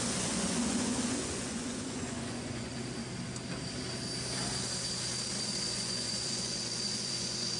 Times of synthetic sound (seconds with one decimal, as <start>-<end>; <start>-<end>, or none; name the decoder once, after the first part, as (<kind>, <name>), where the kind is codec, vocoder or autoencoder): 0.0-2.7 (vocoder, Vocos); 5.4-7.6